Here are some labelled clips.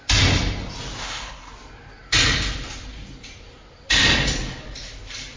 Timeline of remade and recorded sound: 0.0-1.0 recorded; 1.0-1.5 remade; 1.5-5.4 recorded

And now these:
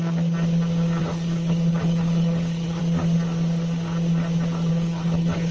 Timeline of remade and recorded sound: 0.0-1.0 recorded; 1.0-2.8 remade; 2.8-4.7 recorded; 4.7-5.5 remade

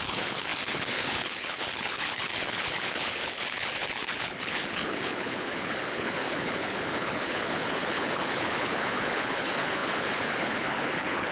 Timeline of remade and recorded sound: 0.0-11.3 remade

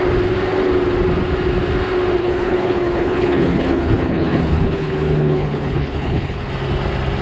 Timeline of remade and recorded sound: 0.0-2.2 recorded; 2.2-6.5 remade; 6.5-7.2 recorded

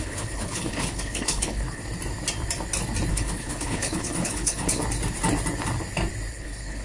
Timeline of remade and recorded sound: 0.0-1.8 remade; 1.8-3.1 recorded; 3.1-4.8 remade; 4.8-6.3 recorded; 6.3-6.8 remade